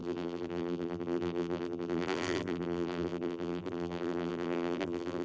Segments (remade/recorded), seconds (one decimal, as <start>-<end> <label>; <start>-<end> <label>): 0.0-5.2 remade